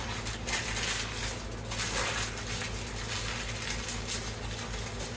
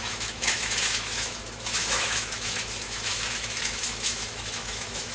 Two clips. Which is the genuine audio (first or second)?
first